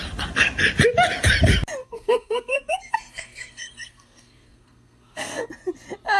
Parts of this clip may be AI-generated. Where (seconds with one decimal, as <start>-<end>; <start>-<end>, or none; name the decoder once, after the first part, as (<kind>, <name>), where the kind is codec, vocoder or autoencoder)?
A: 1.8-5.5 (codec, SNAC)